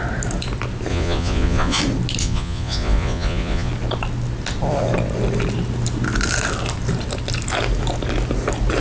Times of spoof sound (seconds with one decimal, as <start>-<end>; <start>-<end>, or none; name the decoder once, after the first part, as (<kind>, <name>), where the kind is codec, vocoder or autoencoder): 0.9-1.8 (vocoder, Vocos); 2.2-3.7